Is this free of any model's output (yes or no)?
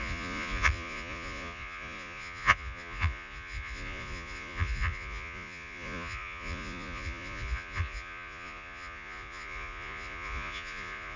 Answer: no